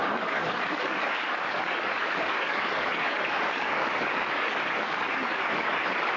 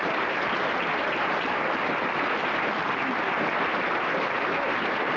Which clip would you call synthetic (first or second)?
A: first